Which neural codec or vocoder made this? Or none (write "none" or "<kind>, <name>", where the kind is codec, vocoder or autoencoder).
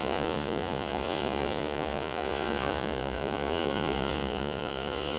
vocoder, Vocos